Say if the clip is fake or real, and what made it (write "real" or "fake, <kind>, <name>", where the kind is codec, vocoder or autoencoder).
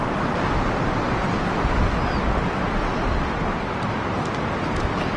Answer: real